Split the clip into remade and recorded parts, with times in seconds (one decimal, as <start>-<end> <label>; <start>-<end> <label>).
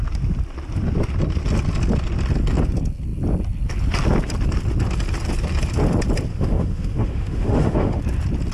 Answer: 0.0-6.3 recorded; 6.3-8.0 remade; 8.0-8.5 recorded